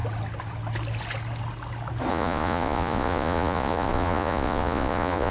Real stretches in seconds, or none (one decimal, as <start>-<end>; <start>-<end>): 0.0-2.1

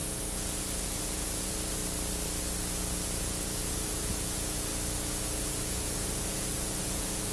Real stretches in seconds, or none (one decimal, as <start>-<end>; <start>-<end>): 1.8-3.2; 4.7-5.2

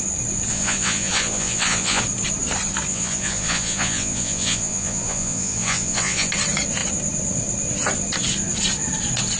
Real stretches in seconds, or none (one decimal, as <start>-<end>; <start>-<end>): 0.0-0.5; 2.0-2.9; 6.3-9.4

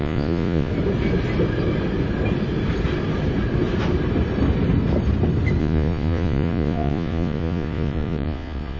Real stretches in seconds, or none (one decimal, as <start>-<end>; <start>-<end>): 0.7-5.6

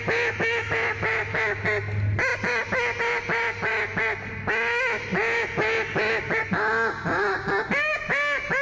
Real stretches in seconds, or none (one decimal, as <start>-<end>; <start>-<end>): 0.0-8.6